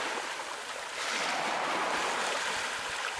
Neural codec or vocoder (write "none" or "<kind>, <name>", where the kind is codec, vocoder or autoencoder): none